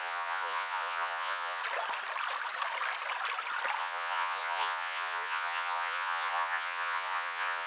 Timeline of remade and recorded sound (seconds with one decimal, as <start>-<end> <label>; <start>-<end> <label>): 0.0-1.6 remade; 1.6-3.8 recorded; 3.8-7.7 remade